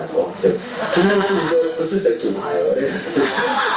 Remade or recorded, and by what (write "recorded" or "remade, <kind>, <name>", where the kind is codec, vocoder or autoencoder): remade, autoencoder, DAC-VAE